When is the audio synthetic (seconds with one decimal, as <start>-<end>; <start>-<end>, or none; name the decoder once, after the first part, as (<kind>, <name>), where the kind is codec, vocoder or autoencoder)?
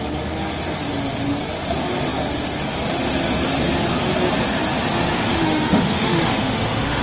5.1-7.0 (autoencoder, DAC-VAE)